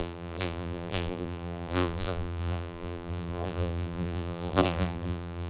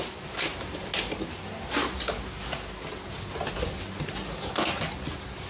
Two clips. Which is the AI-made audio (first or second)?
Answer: first